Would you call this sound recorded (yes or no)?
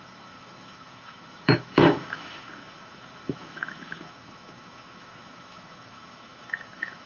no